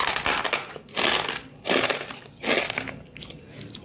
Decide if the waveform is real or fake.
real